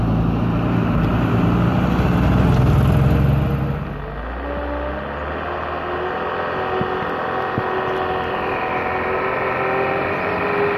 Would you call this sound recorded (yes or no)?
yes